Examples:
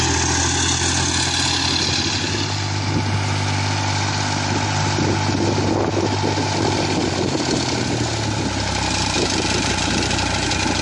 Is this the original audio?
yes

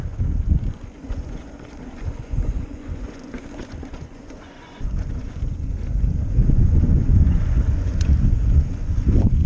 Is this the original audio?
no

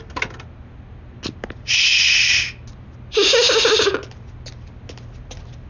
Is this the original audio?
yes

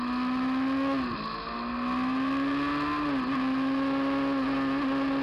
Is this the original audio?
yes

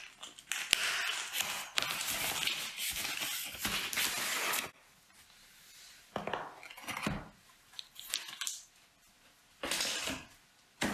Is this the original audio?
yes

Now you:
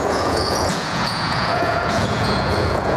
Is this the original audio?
no